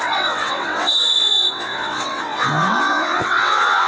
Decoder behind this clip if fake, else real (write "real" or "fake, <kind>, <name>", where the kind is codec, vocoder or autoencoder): fake, vocoder, WaveNeXt